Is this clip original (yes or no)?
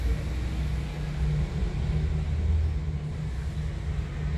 yes